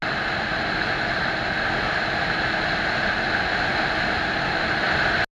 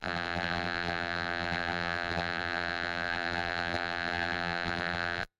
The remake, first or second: second